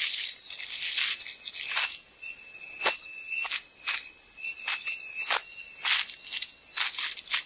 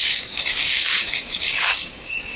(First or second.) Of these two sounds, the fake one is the second